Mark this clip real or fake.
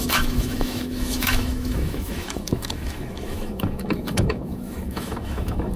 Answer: fake